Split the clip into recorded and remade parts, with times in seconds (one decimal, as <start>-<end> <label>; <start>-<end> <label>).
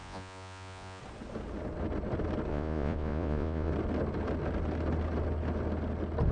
0.0-1.0 remade; 1.0-2.5 recorded; 2.5-3.7 remade; 3.7-6.3 recorded